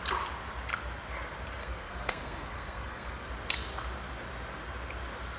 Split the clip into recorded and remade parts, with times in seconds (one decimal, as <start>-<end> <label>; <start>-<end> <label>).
0.0-1.6 recorded; 1.6-3.3 remade; 3.3-5.4 recorded

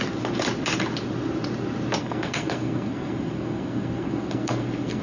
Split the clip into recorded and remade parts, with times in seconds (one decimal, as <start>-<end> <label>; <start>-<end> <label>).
0.0-2.0 recorded; 2.0-5.0 remade

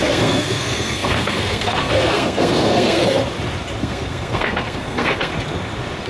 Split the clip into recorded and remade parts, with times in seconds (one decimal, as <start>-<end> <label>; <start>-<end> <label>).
0.0-3.0 remade; 3.0-3.8 recorded; 3.8-5.3 remade; 5.3-6.1 recorded

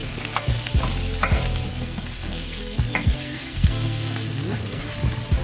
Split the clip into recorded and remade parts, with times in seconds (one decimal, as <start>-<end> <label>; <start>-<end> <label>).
0.0-0.7 remade; 0.7-1.7 recorded; 1.7-4.9 remade; 4.9-5.4 recorded

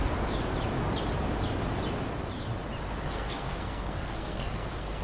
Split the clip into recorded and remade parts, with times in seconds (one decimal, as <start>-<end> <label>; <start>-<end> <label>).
0.0-3.0 recorded; 3.0-5.0 remade